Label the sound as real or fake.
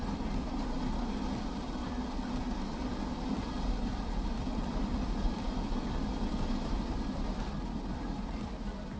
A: real